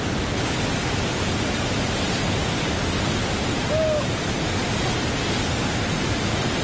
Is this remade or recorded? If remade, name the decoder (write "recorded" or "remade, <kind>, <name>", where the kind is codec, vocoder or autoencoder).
recorded